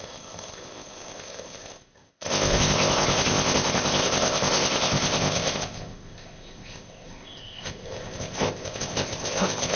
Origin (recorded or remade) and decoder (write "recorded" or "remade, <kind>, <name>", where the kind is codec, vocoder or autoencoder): remade, codec, ZipCodec